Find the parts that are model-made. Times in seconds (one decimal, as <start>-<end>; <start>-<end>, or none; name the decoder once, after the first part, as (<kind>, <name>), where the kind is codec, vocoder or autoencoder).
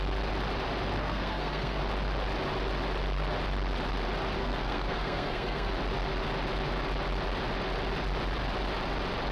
1.0-1.8 (codec, SNAC); 4.4-5.7